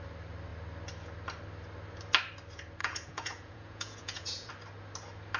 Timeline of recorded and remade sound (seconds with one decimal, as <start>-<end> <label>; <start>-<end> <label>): 0.0-2.8 recorded; 2.8-4.5 remade; 4.5-5.4 recorded

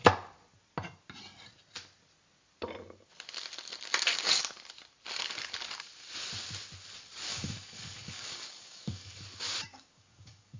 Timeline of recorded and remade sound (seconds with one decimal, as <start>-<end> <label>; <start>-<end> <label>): 0.0-7.3 recorded; 7.3-9.2 remade; 9.2-9.7 recorded; 9.7-10.6 remade